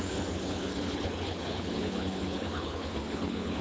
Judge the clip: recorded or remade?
remade